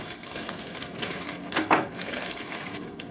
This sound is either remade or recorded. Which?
remade